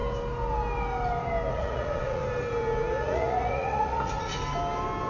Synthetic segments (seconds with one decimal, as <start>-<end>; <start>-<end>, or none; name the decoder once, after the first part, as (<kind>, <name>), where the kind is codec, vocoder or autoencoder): 1.5-2.2 (vocoder, Vocos); 3.0-4.3